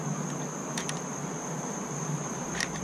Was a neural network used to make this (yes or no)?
yes